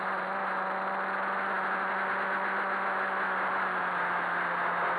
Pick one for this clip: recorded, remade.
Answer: recorded